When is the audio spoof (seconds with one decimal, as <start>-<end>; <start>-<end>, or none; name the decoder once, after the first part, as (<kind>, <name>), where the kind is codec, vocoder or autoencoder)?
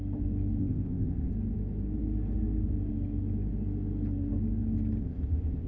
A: 0.6-1.3 (codec, ZipCodec); 5.0-5.7